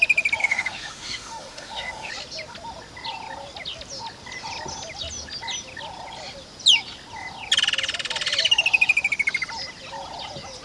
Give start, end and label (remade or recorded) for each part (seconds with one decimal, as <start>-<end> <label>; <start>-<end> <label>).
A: 0.0-0.4 recorded; 0.4-2.1 remade; 2.1-10.6 recorded